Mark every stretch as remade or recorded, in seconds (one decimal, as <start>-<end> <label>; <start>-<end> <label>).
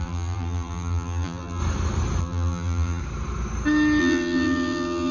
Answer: 0.0-1.6 remade; 1.6-2.2 recorded; 2.2-3.0 remade; 3.0-4.0 recorded; 4.0-5.1 remade